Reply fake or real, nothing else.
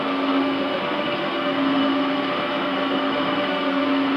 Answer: fake